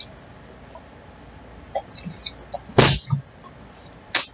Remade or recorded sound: recorded